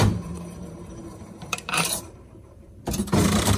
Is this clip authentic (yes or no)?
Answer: no